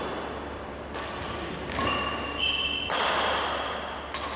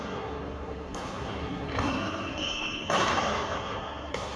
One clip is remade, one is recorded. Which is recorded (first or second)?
first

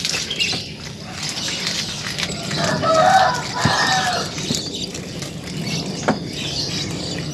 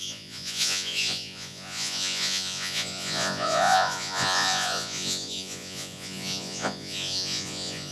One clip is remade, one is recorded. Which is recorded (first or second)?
first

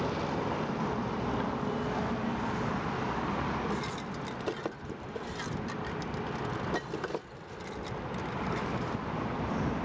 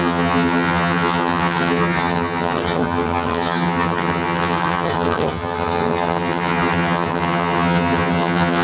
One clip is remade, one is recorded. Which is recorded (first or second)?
first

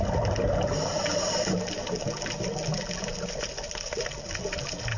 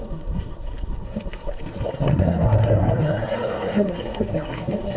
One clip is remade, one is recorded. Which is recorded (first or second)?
first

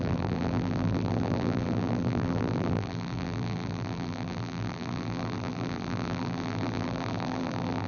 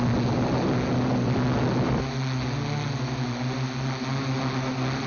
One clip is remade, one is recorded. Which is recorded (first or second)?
second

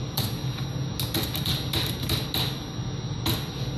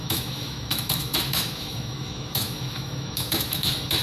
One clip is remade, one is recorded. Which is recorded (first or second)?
first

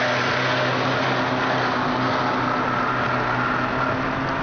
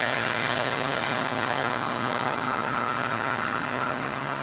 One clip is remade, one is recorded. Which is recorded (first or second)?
first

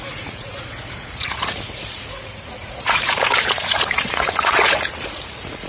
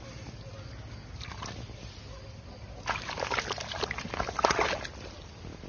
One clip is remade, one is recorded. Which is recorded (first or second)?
second